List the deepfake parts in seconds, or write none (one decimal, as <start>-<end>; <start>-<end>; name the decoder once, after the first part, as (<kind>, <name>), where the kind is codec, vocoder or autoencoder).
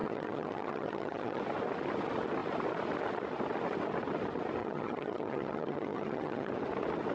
0.0-1.4 (vocoder, HiFi-GAN); 4.6-6.5